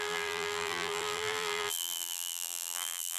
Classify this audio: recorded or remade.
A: remade